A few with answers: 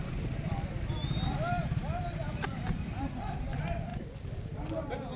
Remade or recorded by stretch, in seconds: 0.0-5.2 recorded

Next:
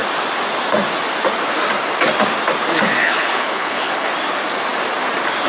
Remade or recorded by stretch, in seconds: 0.0-3.0 recorded; 3.0-4.1 remade; 4.1-5.5 recorded

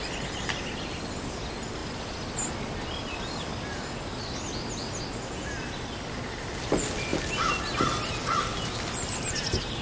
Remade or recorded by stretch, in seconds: 0.0-9.8 recorded

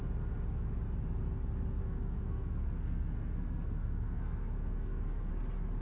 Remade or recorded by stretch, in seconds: 0.0-1.8 recorded; 1.8-5.3 remade; 5.3-5.8 recorded

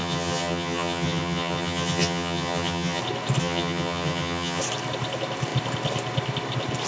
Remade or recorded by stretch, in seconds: 0.0-3.0 remade; 3.0-3.4 recorded; 3.4-4.6 remade; 4.6-6.9 recorded

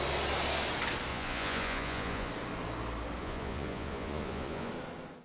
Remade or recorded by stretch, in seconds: 0.0-1.1 recorded; 1.1-2.3 remade; 2.3-3.2 recorded; 3.2-4.7 remade; 4.7-5.2 recorded

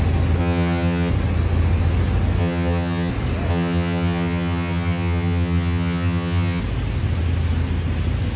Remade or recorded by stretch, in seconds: 0.0-0.4 recorded; 0.4-1.1 remade; 1.1-2.4 recorded; 2.4-3.1 remade; 3.1-3.5 recorded; 3.5-6.6 remade; 6.6-8.4 recorded